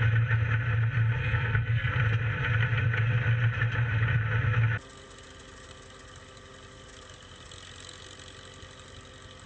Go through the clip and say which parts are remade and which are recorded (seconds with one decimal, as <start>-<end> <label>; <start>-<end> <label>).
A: 0.0-1.2 recorded; 1.2-1.9 remade; 1.9-9.5 recorded